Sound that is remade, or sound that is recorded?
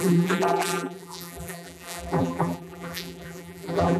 remade